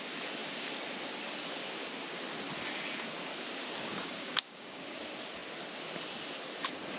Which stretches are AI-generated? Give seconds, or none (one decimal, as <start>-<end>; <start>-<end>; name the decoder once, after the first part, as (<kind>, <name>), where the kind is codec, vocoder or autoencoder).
3.9-5.0 (codec, DAC)